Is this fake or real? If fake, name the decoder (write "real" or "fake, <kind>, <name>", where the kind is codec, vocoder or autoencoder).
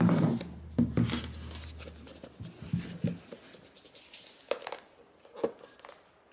real